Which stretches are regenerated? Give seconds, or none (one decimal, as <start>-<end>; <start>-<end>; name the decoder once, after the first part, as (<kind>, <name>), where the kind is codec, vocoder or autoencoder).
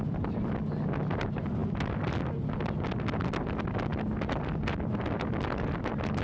none